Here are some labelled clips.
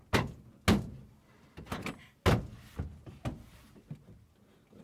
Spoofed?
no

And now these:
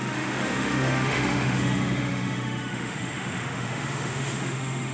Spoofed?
yes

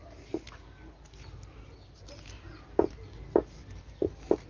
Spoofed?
no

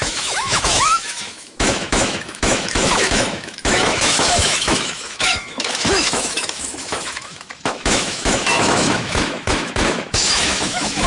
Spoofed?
yes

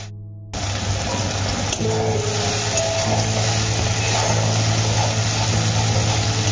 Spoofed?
no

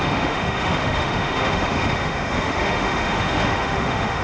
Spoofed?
yes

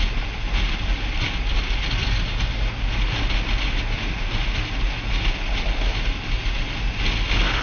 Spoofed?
no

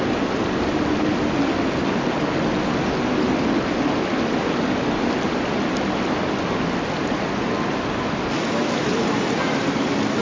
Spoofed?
no